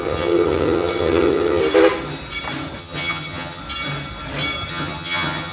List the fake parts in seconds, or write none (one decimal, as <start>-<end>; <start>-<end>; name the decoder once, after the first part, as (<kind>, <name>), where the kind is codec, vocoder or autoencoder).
0.0-1.6 (vocoder, HiFi-GAN); 2.8-3.6; 4.7-5.5